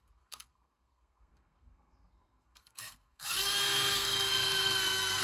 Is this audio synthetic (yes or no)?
yes